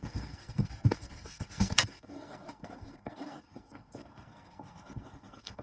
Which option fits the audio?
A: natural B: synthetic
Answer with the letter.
B